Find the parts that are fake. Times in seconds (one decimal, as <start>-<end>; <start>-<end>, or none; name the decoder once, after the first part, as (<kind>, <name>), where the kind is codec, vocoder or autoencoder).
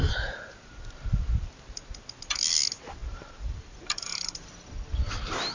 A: 3.0-4.7 (vocoder, BigVGAN v2)